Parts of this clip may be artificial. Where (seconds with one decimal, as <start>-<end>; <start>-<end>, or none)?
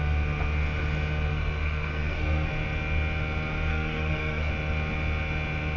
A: 1.3-2.5; 3.7-4.5